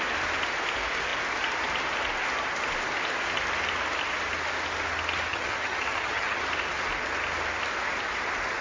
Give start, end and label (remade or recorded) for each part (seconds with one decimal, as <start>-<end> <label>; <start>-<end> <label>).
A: 0.0-5.3 recorded; 5.3-6.4 remade; 6.4-8.6 recorded